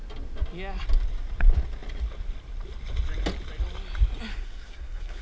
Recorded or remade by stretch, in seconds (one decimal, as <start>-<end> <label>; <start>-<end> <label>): 0.0-4.3 recorded; 4.3-5.2 remade

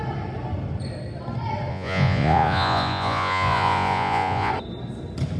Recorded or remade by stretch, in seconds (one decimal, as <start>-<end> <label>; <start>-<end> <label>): 0.0-1.7 recorded; 1.7-4.5 remade; 4.5-5.4 recorded

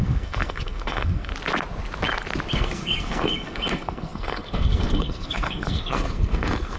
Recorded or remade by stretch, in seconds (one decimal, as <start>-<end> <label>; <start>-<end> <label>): 0.0-1.3 remade; 1.3-2.5 recorded; 2.5-6.8 remade

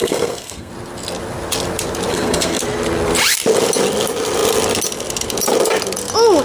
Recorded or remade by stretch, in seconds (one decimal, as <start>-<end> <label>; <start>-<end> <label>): 0.0-0.7 remade; 0.7-2.1 recorded; 2.1-2.6 remade; 2.6-6.4 recorded

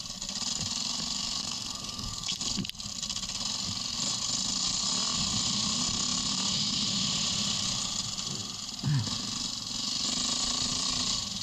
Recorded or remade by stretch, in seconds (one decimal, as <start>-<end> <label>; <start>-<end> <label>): 0.0-1.4 recorded; 1.4-2.4 remade; 2.4-11.4 recorded

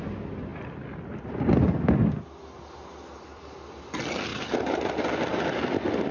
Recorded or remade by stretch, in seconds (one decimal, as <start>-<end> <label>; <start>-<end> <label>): 0.0-4.3 recorded; 4.3-4.9 remade; 4.9-6.1 recorded